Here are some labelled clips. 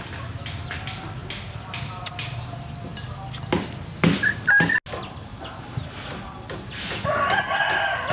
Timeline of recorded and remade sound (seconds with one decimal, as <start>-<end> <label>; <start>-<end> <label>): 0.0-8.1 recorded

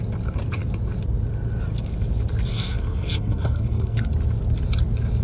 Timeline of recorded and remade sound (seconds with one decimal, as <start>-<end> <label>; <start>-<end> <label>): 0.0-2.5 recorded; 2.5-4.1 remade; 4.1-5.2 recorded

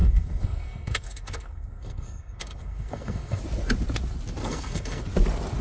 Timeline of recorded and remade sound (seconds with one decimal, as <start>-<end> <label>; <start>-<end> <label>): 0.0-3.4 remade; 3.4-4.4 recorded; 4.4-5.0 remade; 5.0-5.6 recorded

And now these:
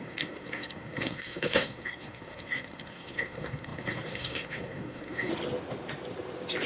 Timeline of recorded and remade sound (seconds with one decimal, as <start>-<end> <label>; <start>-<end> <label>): 0.0-5.3 remade; 5.3-6.7 recorded

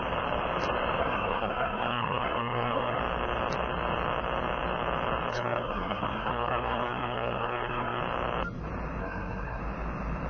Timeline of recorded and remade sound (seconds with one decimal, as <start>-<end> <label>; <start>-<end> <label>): 0.0-1.0 recorded; 1.0-3.0 remade; 3.0-5.3 recorded; 5.3-8.0 remade; 8.0-9.0 recorded; 9.0-9.6 remade; 9.6-10.3 recorded

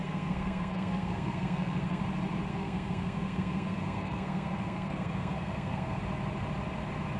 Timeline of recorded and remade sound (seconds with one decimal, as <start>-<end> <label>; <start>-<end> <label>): 0.0-2.0 remade; 2.0-2.5 recorded; 2.5-6.0 remade; 6.0-7.2 recorded

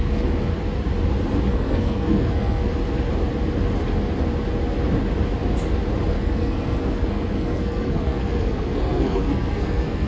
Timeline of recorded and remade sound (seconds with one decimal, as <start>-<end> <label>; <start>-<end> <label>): 0.0-0.5 remade; 0.5-1.5 recorded; 1.5-2.7 remade; 2.7-6.1 recorded; 6.1-10.1 remade